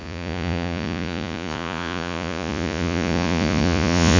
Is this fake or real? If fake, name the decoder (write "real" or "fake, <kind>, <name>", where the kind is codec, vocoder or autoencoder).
fake, vocoder, Vocos